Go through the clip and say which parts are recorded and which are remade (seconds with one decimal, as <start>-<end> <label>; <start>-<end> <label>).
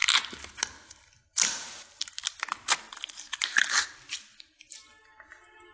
0.0-5.7 recorded